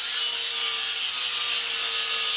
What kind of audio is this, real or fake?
real